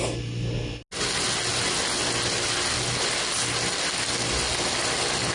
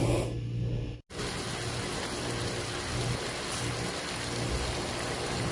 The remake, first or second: second